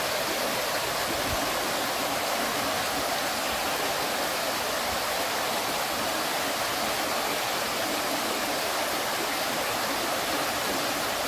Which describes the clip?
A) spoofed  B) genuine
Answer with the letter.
A